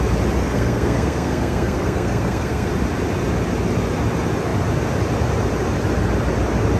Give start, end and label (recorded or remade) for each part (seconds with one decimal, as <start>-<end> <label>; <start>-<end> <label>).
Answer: 0.0-0.4 recorded; 0.4-2.7 remade; 2.7-6.8 recorded